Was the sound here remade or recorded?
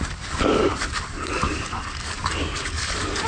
remade